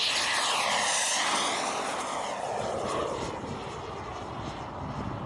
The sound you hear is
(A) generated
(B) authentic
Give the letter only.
B